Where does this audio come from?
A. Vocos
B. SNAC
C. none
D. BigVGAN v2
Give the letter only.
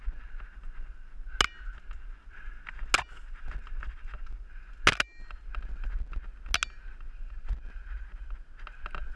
C